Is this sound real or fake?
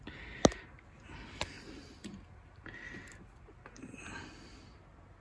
real